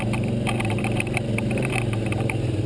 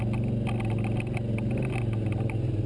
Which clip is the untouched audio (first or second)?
second